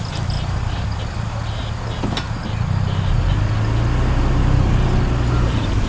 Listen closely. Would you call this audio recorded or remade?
recorded